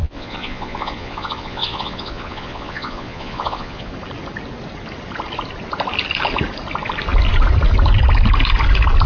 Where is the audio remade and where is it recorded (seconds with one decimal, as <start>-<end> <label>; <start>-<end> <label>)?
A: 0.0-3.9 remade; 3.9-9.1 recorded